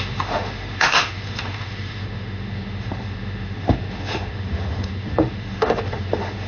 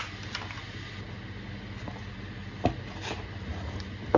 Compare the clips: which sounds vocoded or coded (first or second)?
first